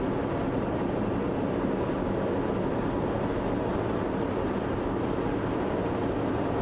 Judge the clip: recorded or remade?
recorded